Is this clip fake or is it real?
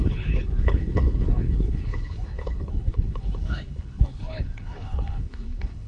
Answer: fake